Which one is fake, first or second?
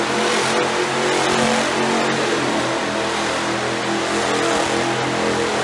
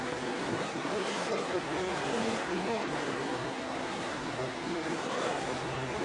second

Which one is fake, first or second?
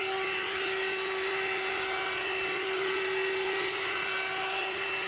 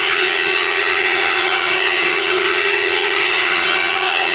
second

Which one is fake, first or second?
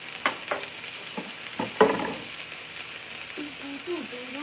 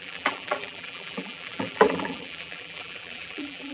second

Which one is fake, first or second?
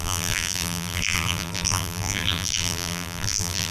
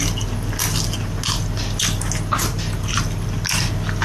first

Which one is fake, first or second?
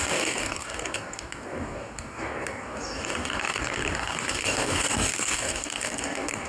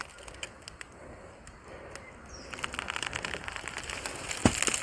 first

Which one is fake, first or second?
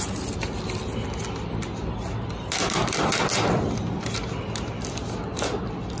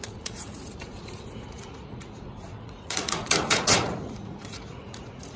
second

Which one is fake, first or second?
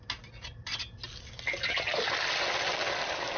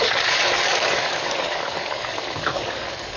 second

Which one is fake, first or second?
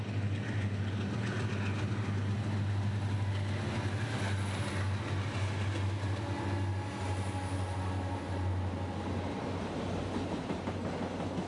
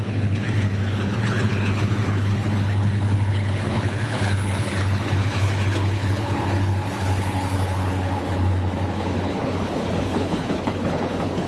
second